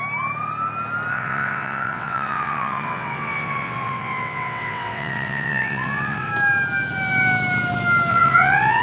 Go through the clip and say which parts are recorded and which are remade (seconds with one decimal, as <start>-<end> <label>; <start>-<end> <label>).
0.0-1.1 recorded; 1.1-6.3 remade; 6.3-8.1 recorded; 8.1-8.8 remade

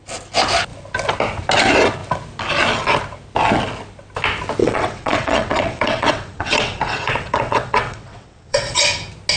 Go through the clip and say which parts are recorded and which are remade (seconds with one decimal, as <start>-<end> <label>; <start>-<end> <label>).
0.0-4.6 recorded; 4.6-8.8 remade; 8.8-9.4 recorded